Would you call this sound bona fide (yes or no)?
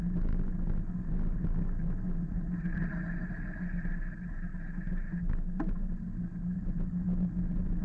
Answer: yes